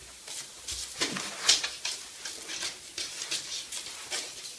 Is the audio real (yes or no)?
yes